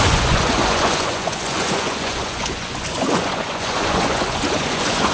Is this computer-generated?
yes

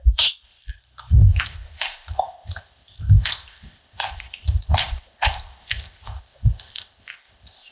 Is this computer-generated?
yes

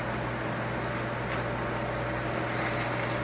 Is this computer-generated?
no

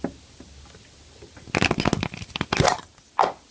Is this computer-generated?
no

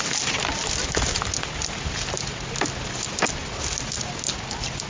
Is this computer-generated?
no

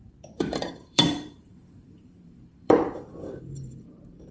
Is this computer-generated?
yes